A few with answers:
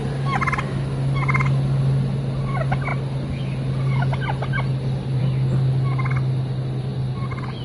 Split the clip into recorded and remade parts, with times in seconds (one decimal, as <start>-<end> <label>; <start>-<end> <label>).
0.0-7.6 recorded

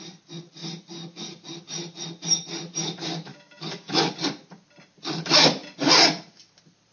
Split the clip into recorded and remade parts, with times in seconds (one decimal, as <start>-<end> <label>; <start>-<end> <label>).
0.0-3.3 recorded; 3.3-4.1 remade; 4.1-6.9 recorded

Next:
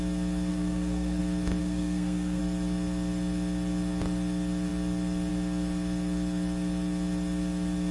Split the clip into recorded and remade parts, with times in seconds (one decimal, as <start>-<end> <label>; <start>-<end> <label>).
0.0-0.5 recorded; 0.5-1.2 remade; 1.2-1.6 recorded; 1.6-2.4 remade; 2.4-7.9 recorded

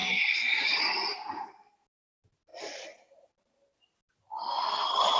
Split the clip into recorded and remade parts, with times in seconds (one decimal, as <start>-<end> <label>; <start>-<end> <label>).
0.0-5.2 recorded